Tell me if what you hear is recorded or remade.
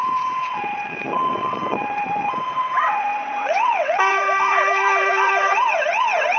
remade